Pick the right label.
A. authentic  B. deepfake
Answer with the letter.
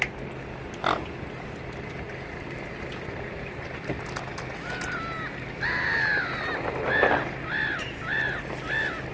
A